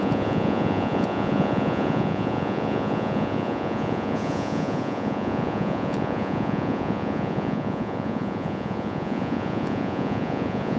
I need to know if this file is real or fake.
fake